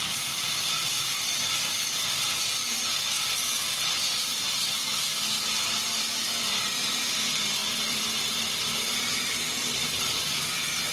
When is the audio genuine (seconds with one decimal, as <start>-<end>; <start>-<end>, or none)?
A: 0.0-10.9